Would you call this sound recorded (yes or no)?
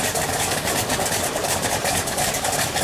no